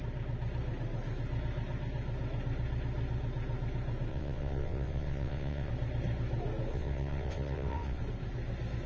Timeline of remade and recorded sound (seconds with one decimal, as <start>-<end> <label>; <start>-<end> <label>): 0.0-4.1 recorded; 4.1-5.7 remade; 5.7-6.7 recorded; 6.7-8.0 remade; 8.0-8.9 recorded

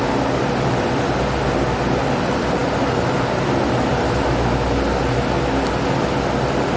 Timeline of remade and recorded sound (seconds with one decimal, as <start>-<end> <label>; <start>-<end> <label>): 0.0-6.8 recorded